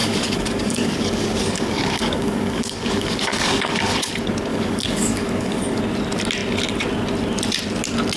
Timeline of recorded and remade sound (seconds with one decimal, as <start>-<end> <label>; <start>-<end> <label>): 0.0-4.1 remade; 4.1-4.5 recorded; 4.5-5.8 remade; 5.8-8.2 recorded